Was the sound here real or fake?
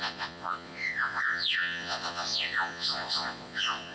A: fake